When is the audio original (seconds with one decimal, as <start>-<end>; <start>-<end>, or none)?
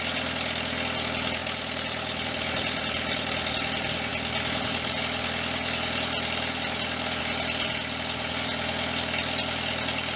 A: 0.0-10.2